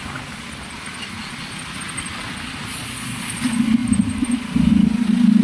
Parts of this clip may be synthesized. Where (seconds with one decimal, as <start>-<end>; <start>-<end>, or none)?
3.8-4.7